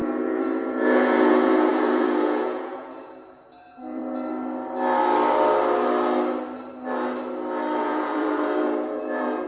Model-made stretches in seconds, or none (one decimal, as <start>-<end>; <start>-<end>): 0.0-4.0; 7.8-9.5